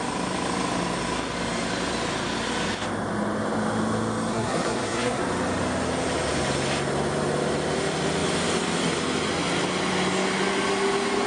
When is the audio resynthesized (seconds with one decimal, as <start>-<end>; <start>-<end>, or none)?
4.3-5.2